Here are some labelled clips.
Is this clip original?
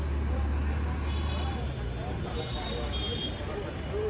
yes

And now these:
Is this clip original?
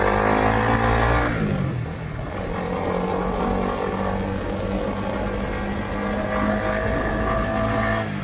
yes